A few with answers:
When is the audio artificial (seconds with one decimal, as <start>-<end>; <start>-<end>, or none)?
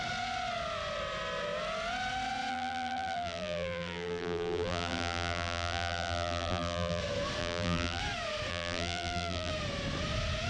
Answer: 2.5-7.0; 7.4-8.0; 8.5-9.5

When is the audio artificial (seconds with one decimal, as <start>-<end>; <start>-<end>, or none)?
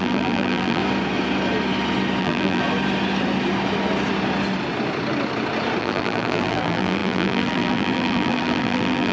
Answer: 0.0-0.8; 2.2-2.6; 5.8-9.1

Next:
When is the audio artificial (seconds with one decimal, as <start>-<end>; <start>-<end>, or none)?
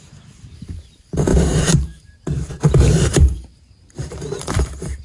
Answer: 1.3-2.5; 3.1-5.0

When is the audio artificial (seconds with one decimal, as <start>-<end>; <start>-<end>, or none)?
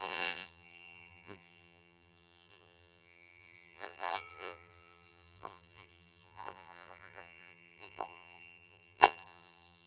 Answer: 0.0-9.9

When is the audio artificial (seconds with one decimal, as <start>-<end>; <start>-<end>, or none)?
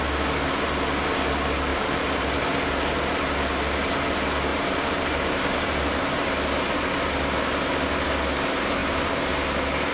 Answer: 1.7-2.7; 4.5-6.1; 8.8-9.3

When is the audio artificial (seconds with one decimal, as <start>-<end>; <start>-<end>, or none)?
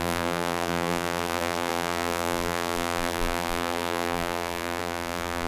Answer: 0.0-5.5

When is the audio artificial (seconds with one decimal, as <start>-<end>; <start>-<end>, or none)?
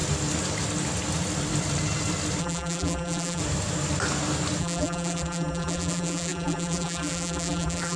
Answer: 2.4-3.4; 4.6-8.0